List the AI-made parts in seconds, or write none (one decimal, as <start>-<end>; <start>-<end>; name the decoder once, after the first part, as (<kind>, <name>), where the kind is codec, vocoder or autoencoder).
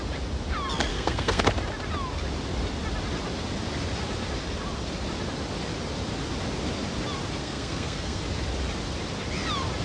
0.9-1.4 (codec, SNAC); 7.4-8.2